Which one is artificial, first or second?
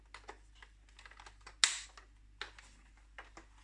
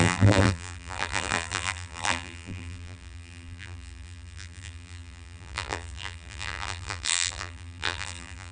second